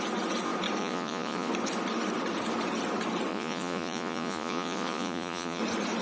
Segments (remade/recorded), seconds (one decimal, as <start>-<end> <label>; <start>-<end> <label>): 0.0-0.8 recorded; 0.8-1.5 remade; 1.5-3.3 recorded; 3.3-5.6 remade; 5.6-6.0 recorded

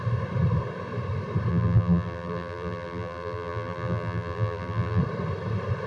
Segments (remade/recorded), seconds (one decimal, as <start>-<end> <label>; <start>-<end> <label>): 0.0-1.5 recorded; 1.5-5.0 remade; 5.0-5.9 recorded

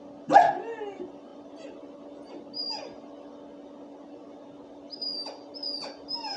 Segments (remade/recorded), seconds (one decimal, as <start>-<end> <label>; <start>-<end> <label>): 0.0-6.4 recorded

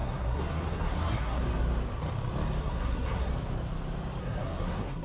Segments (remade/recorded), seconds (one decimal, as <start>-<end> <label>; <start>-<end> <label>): 0.0-1.4 remade; 1.4-2.6 recorded; 2.6-3.3 remade; 3.3-4.2 recorded; 4.2-5.0 remade

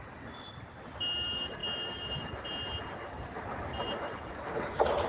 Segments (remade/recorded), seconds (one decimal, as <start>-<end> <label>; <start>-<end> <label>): 0.0-5.1 recorded

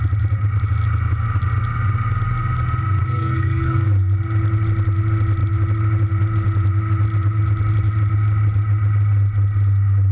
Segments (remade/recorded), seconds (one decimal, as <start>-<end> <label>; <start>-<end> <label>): 0.0-3.0 recorded; 3.0-3.9 remade; 3.9-10.1 recorded

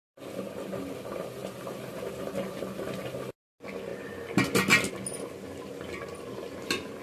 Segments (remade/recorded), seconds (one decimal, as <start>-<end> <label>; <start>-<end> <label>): 0.0-1.4 recorded; 1.4-2.5 remade; 2.5-7.0 recorded